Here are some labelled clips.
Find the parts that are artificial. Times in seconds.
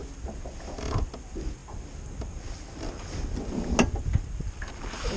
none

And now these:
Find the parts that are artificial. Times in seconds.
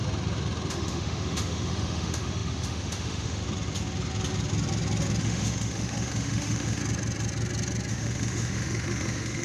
0.7-3.4 (autoencoder, DAC-VAE); 5.2-6.8; 7.9-9.4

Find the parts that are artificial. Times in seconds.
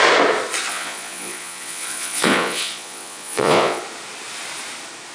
0.7-3.8 (vocoder, Vocos)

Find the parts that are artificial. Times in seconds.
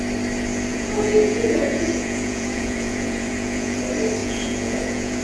0.7-3.8 (vocoder, Vocos); 4.2-5.2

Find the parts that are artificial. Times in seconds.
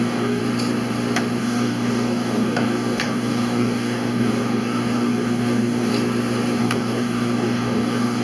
0.0-0.4 (codec, DAC); 1.4-5.9; 6.6-8.2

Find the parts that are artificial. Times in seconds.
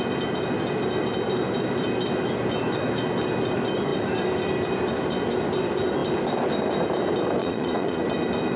7.4-8.0 (vocoder, Vocos)